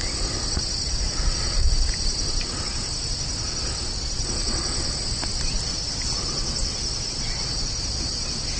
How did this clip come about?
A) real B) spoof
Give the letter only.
A